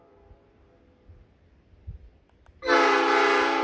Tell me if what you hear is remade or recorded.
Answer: recorded